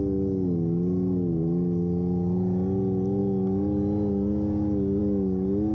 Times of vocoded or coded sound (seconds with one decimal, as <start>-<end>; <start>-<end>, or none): none